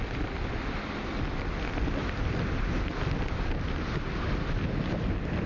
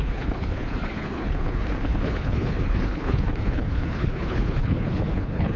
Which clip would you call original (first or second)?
first